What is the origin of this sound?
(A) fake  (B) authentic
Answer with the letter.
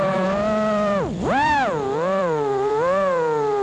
A